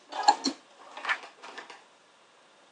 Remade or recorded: recorded